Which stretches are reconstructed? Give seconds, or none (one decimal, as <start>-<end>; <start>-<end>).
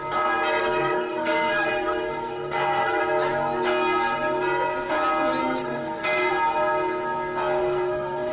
0.6-3.0; 5.4-6.3; 7.6-8.3